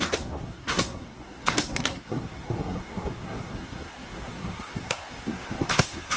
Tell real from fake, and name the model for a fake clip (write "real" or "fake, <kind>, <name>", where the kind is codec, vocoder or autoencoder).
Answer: fake, codec, SNAC